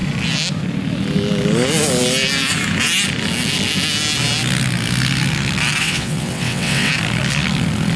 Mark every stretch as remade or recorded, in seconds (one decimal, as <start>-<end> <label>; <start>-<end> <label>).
0.0-5.8 recorded; 5.8-6.9 remade; 6.9-8.0 recorded